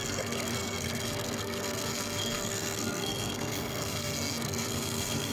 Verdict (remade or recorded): remade